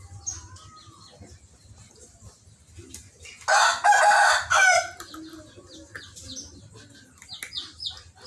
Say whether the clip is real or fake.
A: real